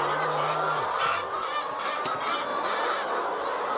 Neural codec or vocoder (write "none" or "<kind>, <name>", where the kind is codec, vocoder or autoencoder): none